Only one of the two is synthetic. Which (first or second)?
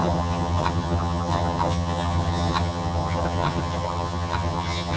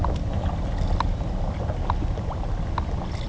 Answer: first